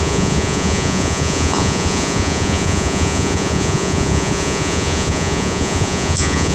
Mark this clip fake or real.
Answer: fake